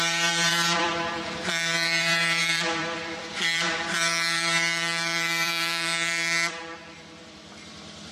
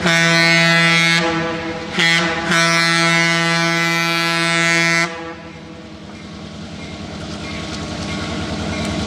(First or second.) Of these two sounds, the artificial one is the first